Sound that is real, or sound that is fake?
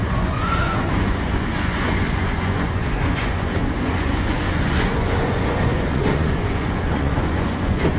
fake